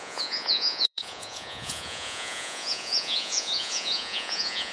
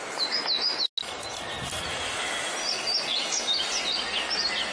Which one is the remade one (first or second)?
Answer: first